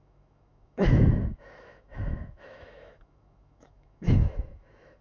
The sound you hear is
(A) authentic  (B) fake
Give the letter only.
B